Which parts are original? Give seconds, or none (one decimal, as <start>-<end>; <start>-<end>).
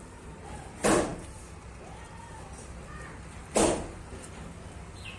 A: 0.0-5.2